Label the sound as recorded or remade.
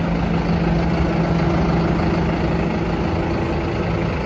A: recorded